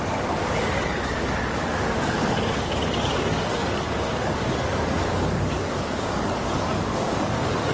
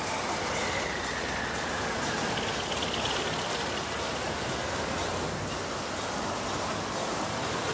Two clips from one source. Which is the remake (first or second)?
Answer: first